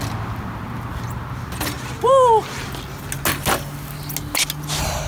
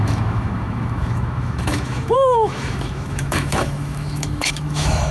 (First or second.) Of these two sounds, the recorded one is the first